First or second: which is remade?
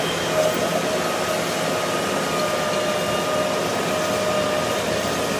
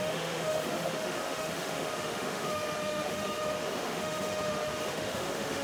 second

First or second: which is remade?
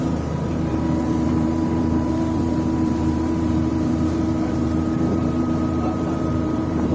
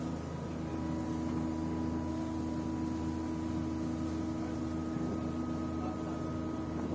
first